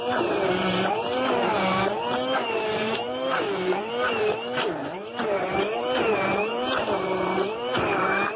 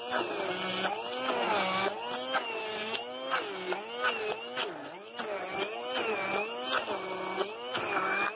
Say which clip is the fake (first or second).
first